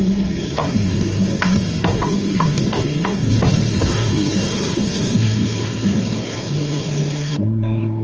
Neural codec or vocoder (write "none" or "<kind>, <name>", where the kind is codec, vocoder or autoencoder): codec, SNAC